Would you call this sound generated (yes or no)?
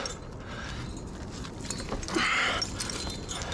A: no